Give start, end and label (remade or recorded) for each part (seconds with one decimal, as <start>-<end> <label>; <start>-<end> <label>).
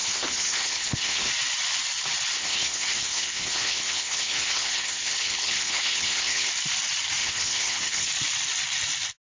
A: 0.0-1.3 remade; 1.3-2.4 recorded; 2.4-6.5 remade; 6.5-7.2 recorded; 7.2-8.1 remade; 8.1-9.2 recorded